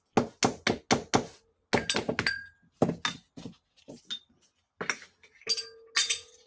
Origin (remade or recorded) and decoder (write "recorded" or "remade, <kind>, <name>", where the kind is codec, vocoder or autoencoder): recorded